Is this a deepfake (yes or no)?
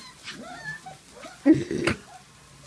no